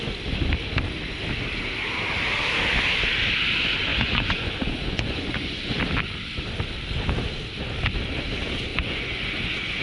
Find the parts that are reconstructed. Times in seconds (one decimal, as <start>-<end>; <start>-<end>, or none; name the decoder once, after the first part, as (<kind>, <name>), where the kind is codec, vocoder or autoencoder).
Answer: 3.9-5.8 (vocoder, Vocos); 8.7-9.8